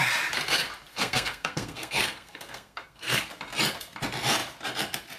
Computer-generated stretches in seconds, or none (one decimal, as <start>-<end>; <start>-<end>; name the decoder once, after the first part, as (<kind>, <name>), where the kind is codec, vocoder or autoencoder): 0.9-3.3 (codec, SNAC)